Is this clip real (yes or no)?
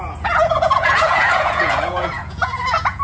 no